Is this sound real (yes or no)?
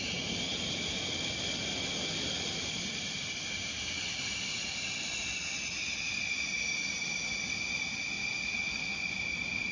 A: yes